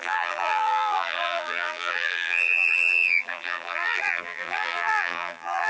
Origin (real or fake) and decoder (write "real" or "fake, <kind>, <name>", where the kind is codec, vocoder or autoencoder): fake, vocoder, BigVGAN v2